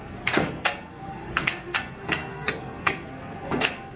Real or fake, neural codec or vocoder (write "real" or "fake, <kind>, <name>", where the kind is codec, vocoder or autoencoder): fake, codec, SNAC